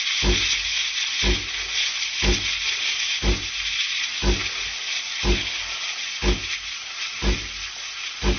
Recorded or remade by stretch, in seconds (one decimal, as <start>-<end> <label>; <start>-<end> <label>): 0.0-8.4 recorded